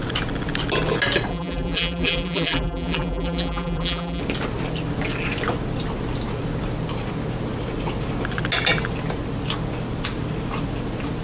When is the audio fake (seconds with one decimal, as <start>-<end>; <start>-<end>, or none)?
1.3-4.2